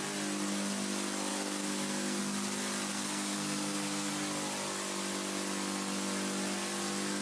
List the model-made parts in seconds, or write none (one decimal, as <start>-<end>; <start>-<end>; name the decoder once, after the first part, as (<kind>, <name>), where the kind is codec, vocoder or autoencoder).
1.3-2.2 (codec, SNAC); 2.9-4.1